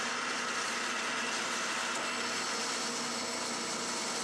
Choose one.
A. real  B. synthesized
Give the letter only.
A